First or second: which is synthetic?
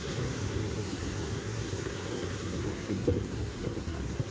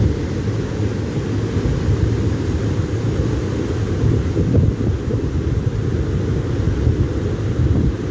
first